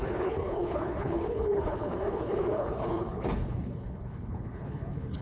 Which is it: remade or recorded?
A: remade